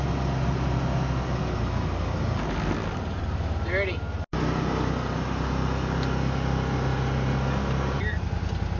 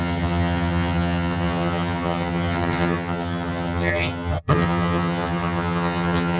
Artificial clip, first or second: second